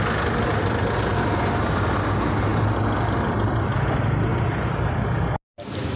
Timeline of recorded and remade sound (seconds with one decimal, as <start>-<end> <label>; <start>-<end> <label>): 0.0-6.0 recorded